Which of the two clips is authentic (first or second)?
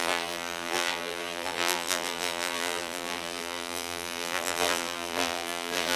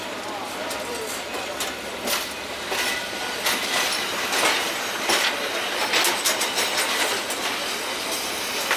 second